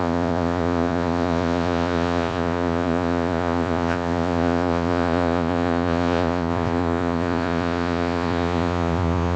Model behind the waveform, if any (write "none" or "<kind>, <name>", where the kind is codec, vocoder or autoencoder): vocoder, Vocos